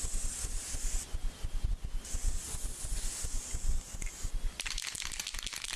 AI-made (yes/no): no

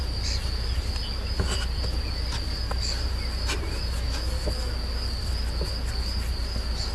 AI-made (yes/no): no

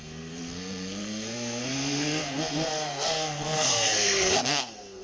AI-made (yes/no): yes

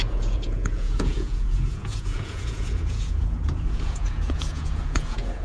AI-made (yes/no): yes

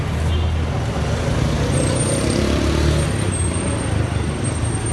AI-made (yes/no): no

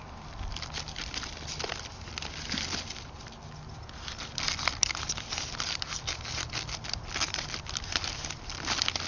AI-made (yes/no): no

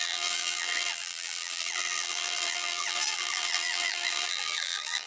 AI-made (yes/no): yes